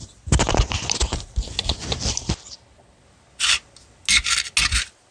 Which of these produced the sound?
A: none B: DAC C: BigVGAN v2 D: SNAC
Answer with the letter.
A